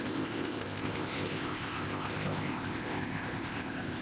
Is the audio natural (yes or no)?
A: no